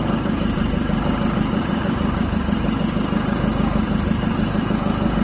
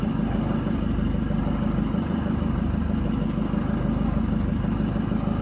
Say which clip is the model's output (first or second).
first